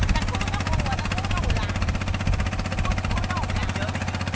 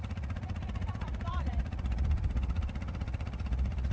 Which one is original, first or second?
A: first